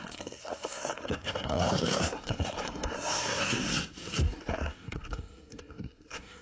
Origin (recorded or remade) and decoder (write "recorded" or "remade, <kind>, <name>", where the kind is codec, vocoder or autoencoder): remade, codec, SNAC